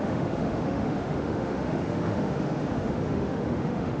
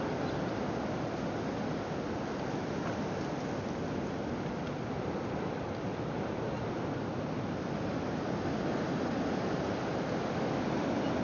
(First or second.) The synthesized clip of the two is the first